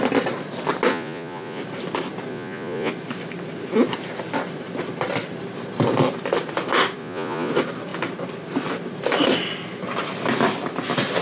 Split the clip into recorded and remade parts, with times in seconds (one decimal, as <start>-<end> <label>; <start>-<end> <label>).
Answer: 0.0-0.9 recorded; 0.9-1.6 remade; 1.6-2.3 recorded; 2.3-2.9 remade; 2.9-7.0 recorded; 7.0-7.5 remade; 7.5-11.2 recorded

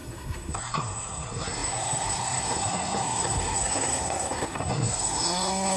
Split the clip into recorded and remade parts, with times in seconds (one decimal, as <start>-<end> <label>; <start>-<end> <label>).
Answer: 0.0-5.8 remade